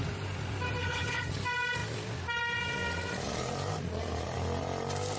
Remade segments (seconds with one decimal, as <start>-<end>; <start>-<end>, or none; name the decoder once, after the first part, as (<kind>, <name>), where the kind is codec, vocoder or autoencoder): 0.8-1.3 (codec, HILCodec)